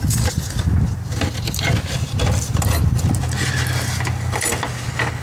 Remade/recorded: recorded